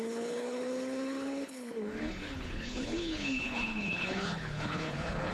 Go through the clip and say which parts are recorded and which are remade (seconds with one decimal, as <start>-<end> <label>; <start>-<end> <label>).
0.0-5.3 remade